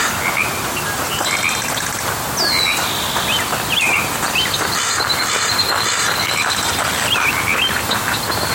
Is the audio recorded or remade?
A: recorded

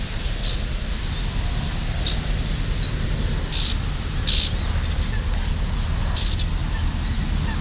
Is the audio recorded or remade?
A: recorded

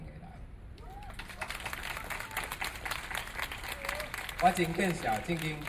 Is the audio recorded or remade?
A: recorded